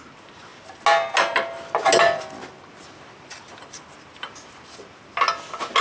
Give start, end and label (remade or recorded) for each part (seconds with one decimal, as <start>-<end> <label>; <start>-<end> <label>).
0.0-5.8 recorded